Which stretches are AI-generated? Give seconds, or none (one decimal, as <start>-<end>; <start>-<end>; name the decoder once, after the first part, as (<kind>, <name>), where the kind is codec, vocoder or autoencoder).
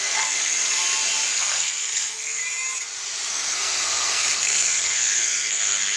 0.0-0.8 (codec, SNAC); 1.3-2.4; 3.3-6.0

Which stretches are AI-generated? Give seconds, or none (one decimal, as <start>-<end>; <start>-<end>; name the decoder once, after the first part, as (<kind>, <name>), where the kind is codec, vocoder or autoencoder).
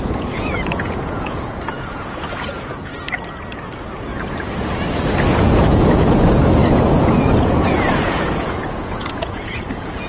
0.0-2.9 (vocoder, Vocos); 5.4-10.1